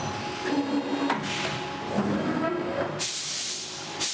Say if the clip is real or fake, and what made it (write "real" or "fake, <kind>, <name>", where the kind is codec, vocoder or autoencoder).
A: real